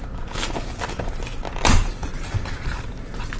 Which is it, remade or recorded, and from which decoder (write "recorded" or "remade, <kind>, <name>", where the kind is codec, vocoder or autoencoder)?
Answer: recorded